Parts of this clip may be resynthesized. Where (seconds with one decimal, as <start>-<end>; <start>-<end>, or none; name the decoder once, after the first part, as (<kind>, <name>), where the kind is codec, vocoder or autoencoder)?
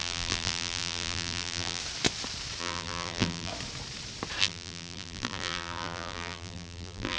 0.0-1.8 (vocoder, BigVGAN v2); 2.6-3.5; 4.4-7.2